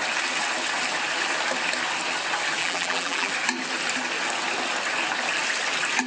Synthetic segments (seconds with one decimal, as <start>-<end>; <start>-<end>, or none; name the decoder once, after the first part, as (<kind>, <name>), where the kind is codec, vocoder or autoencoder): 2.6-3.3 (vocoder, BigVGAN v2)